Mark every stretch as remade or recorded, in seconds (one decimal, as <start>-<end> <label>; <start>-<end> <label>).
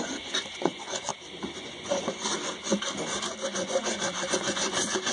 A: 0.0-1.1 remade; 1.1-1.6 recorded; 1.6-2.3 remade; 2.3-3.2 recorded; 3.2-5.1 remade